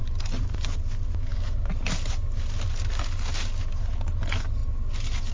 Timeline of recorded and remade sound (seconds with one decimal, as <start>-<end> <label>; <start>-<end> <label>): 0.0-0.5 remade; 0.5-5.3 recorded